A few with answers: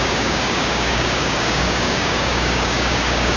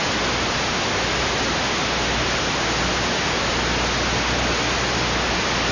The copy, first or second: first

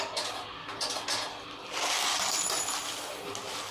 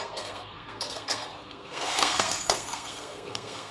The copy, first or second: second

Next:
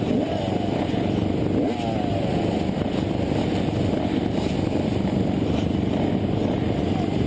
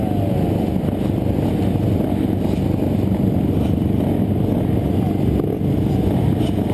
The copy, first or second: first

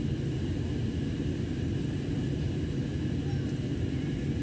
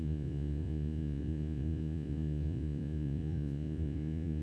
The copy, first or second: second